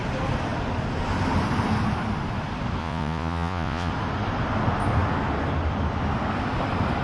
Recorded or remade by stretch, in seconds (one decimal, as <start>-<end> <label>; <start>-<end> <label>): 0.0-2.8 recorded; 2.8-3.9 remade; 3.9-7.0 recorded